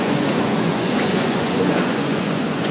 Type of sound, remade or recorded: remade